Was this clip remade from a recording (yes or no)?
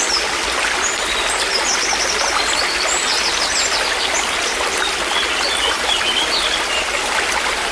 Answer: no